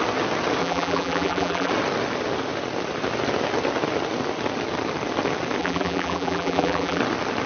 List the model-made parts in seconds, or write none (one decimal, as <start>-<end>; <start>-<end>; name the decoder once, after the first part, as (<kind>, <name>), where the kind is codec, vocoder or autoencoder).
0.6-1.7 (vocoder, BigVGAN v2); 5.6-7.0